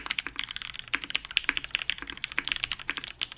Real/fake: real